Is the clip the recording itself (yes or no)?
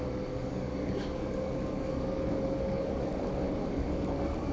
no